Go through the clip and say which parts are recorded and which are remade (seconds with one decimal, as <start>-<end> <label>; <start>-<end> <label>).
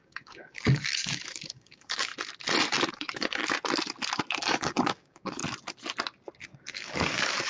0.0-2.1 remade; 2.1-2.9 recorded; 2.9-3.4 remade; 3.4-4.4 recorded; 4.4-5.4 remade; 5.4-6.4 recorded; 6.4-7.5 remade